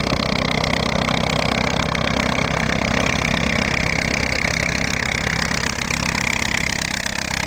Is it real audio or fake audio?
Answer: real